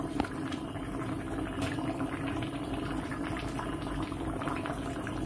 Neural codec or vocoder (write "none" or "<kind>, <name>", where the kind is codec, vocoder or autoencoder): vocoder, BigVGAN v2